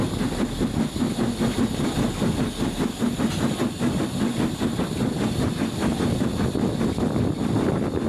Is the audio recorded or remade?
recorded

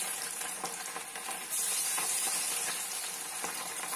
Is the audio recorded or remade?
remade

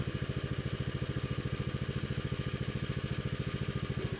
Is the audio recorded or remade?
recorded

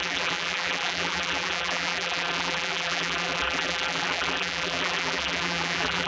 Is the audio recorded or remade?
remade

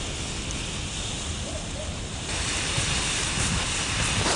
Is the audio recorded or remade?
recorded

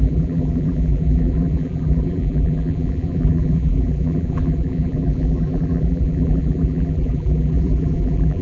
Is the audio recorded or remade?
remade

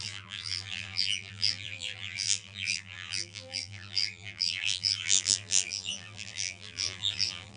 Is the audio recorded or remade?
remade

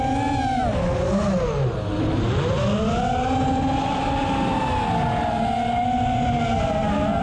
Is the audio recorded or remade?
recorded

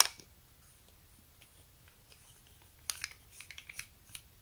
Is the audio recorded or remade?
recorded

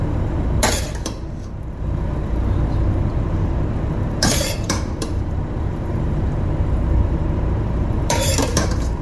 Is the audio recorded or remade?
remade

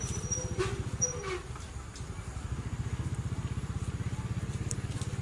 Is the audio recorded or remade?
recorded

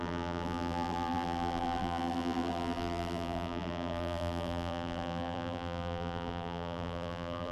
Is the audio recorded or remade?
remade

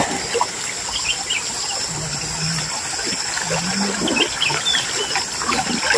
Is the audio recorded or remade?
recorded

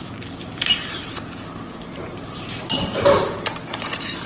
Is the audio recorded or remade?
remade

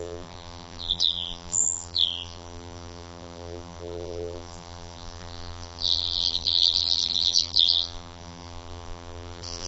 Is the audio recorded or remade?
remade